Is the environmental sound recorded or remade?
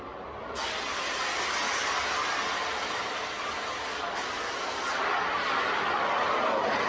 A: recorded